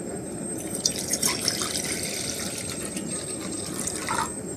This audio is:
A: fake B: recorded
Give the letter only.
B